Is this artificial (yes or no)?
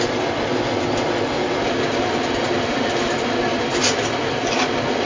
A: no